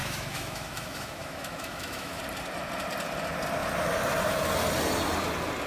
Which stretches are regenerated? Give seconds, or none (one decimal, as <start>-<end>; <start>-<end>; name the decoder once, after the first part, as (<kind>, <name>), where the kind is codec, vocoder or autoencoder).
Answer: 0.0-2.2 (autoencoder, DAC-VAE)